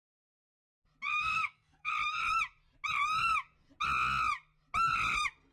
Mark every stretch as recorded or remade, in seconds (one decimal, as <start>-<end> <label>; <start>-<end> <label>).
0.0-1.2 recorded; 1.2-1.9 remade; 1.9-5.5 recorded